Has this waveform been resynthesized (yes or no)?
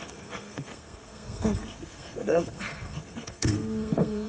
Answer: yes